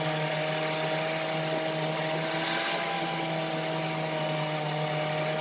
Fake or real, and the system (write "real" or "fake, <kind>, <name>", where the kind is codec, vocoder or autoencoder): real